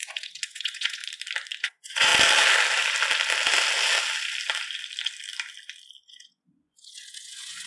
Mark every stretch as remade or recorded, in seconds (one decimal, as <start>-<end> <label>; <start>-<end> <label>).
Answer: 0.0-1.0 remade; 1.0-1.6 recorded; 1.6-2.1 remade; 2.1-6.1 recorded; 6.1-7.7 remade